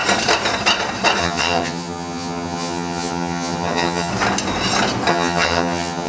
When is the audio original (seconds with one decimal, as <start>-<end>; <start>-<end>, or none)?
0.0-1.2; 4.1-5.1